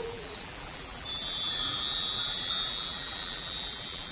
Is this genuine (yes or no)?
no